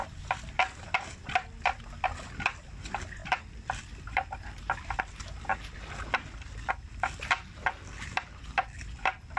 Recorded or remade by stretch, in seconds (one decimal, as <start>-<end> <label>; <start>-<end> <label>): 0.0-3.2 recorded; 3.2-8.4 remade; 8.4-9.4 recorded